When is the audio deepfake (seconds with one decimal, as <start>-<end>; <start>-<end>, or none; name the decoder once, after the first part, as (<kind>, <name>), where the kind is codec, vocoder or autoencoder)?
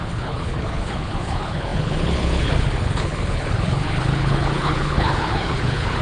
0.0-6.0 (codec, HILCodec)